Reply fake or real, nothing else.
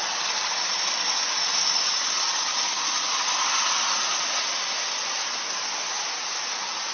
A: real